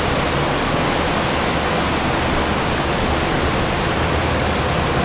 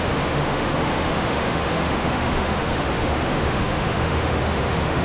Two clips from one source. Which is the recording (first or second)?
first